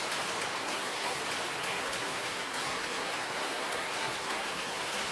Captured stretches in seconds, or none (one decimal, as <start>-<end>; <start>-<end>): 0.0-0.6; 1.2-1.6